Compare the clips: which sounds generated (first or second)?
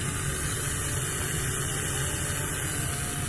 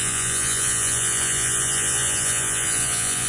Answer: second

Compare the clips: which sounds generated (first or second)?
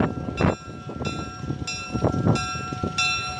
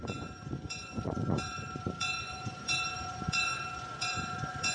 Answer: second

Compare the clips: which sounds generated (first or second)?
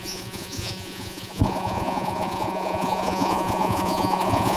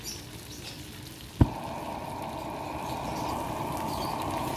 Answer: first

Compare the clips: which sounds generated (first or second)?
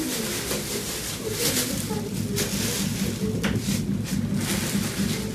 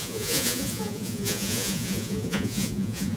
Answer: second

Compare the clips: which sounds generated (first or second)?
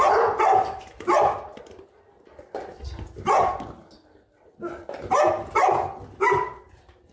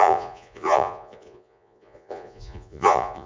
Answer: second